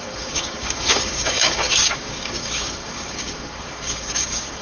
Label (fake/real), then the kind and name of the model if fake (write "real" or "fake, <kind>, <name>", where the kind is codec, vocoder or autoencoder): fake, codec, DAC